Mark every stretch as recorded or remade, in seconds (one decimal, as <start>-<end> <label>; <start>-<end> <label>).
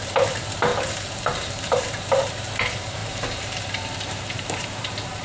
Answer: 0.0-0.7 recorded; 0.7-2.1 remade; 2.1-3.0 recorded; 3.0-5.2 remade